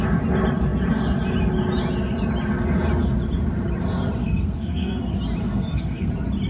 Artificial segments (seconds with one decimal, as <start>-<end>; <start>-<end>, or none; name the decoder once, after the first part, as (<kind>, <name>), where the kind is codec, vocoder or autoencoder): 4.2-5.0 (codec, SNAC); 5.4-6.1